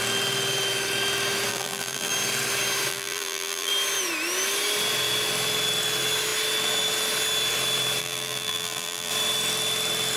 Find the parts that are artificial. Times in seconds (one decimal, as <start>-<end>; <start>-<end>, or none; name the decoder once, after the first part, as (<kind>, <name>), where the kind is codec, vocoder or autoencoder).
1.5-2.1 (vocoder, BigVGAN v2); 2.9-3.7; 8.0-9.1